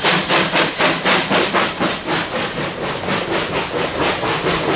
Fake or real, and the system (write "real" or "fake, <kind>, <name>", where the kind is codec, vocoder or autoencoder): real